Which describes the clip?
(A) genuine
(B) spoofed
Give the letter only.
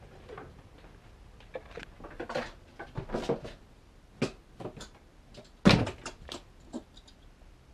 A